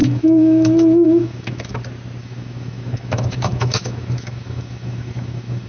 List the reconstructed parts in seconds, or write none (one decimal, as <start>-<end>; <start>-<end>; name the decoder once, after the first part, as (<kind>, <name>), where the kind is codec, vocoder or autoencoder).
0.0-1.8 (autoencoder, DAC-VAE); 2.2-5.7